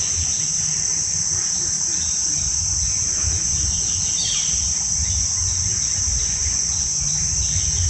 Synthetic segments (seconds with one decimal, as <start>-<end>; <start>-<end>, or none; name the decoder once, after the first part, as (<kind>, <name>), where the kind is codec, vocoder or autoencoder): 2.5-3.8 (vocoder, Vocos); 6.1-7.2